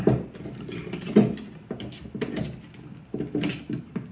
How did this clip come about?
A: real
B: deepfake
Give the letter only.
A